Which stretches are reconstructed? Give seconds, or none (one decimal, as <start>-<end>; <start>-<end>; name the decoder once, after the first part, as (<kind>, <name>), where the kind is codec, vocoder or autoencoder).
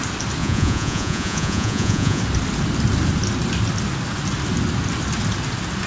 0.4-2.2 (vocoder, Vocos)